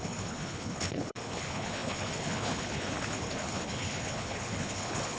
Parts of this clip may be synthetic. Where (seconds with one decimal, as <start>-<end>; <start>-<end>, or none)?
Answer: 0.0-5.2